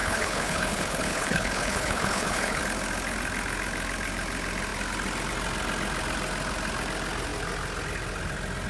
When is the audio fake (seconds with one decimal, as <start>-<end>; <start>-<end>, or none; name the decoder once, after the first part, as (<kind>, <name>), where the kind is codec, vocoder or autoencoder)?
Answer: 0.0-2.6 (codec, HILCodec)